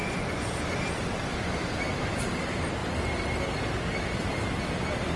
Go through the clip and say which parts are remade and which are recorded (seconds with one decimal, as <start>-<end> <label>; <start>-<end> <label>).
0.0-0.8 remade; 0.8-5.2 recorded